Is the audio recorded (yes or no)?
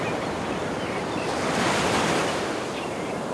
yes